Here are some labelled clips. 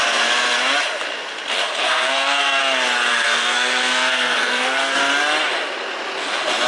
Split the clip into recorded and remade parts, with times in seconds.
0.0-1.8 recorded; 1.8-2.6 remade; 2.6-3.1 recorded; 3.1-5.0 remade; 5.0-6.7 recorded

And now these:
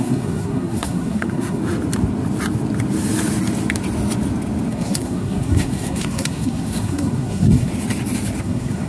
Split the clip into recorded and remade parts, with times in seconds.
0.0-1.6 remade; 1.6-4.7 recorded; 4.7-7.7 remade; 7.7-8.4 recorded; 8.4-8.9 remade

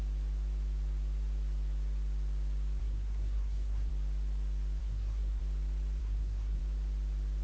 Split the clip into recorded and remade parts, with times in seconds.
0.0-2.8 recorded; 2.8-3.9 remade; 3.9-4.8 recorded; 4.8-5.4 remade; 5.4-6.0 recorded; 6.0-6.6 remade; 6.6-7.4 recorded

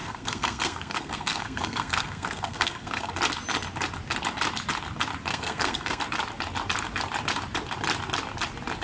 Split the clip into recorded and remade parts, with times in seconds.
0.0-3.1 remade; 3.1-5.3 recorded; 5.3-6.0 remade; 6.0-8.8 recorded